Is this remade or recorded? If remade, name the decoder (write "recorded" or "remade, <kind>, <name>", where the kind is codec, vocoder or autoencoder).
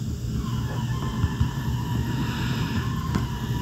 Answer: recorded